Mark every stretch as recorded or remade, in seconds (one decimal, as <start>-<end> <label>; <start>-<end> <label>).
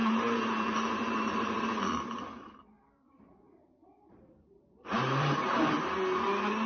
0.0-1.6 remade; 1.6-3.8 recorded; 3.8-5.7 remade; 5.7-6.7 recorded